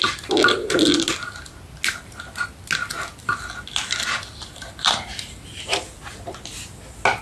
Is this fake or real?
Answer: real